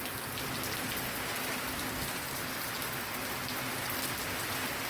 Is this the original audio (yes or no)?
yes